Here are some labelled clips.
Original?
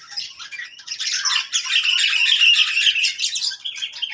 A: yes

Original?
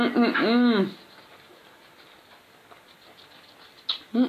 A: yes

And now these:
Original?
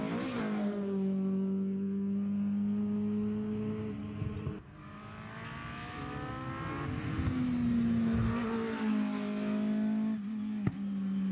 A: yes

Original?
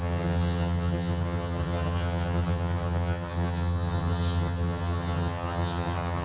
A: no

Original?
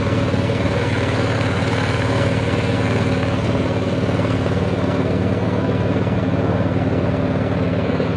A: no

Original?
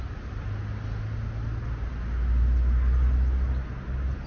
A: yes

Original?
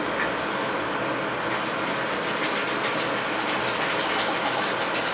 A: yes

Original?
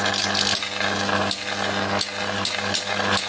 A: yes